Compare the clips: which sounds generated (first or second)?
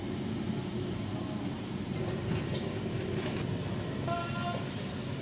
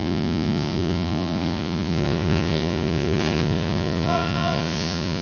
second